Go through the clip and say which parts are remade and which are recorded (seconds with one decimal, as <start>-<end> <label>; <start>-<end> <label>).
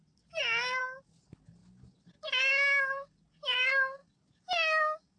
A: 0.0-5.2 recorded